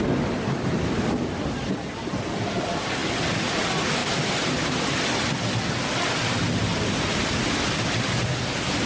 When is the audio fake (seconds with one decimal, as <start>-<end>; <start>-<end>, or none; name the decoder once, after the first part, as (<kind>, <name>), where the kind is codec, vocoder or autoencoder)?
4.0-5.0 (vocoder, BigVGAN v2); 6.7-7.5